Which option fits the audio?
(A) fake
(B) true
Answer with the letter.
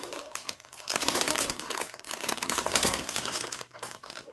A